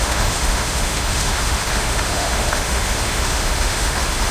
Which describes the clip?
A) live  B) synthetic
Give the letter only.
B